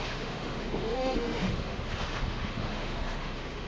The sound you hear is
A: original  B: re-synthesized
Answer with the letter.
B